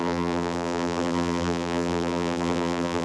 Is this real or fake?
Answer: fake